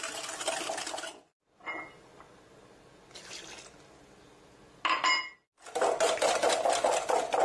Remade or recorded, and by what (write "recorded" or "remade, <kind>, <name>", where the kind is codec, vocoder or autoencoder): recorded